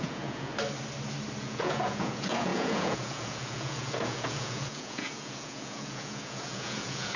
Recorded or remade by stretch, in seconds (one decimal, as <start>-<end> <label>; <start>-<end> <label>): 0.0-0.5 remade; 0.5-1.4 recorded; 1.4-7.2 remade